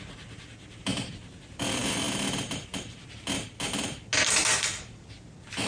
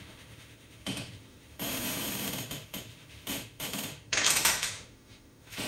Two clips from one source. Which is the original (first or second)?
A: first